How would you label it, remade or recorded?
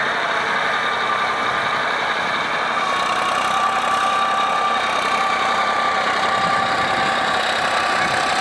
recorded